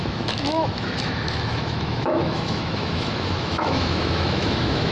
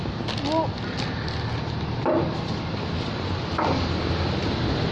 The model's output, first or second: first